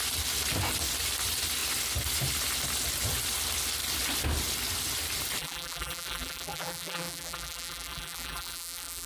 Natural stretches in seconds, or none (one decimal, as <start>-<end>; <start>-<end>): 0.0-5.4